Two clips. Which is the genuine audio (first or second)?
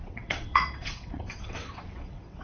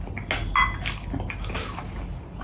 second